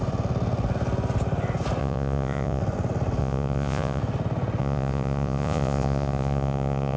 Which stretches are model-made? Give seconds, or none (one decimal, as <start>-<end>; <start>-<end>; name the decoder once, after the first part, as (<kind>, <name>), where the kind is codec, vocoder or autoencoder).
1.8-2.6 (vocoder, Vocos); 3.2-4.0; 4.6-7.0